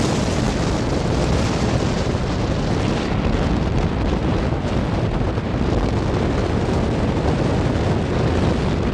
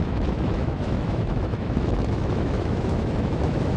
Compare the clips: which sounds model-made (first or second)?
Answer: second